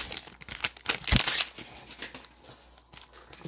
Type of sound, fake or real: real